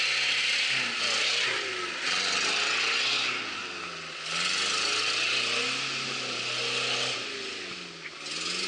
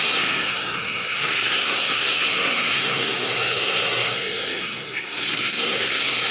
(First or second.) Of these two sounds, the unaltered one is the first